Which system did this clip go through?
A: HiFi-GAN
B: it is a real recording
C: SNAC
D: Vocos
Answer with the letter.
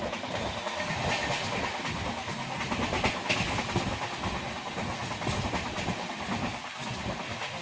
B